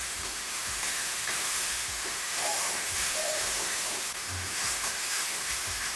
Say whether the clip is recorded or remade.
remade